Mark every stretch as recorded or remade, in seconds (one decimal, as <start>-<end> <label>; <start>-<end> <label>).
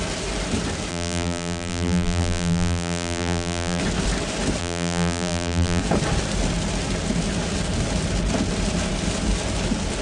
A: 0.0-0.9 recorded; 0.9-3.8 remade; 3.8-4.6 recorded; 4.6-5.8 remade; 5.8-10.0 recorded